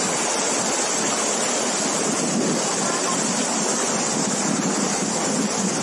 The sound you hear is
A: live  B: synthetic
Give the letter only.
A